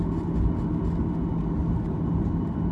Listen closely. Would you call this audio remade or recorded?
recorded